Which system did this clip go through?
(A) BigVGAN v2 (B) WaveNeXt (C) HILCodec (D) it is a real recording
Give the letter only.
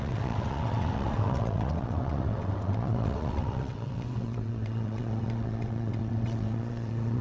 B